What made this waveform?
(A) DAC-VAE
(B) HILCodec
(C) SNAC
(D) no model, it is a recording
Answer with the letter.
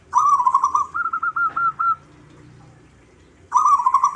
D